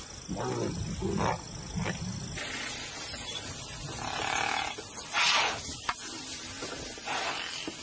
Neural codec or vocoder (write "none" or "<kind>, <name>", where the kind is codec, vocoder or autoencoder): none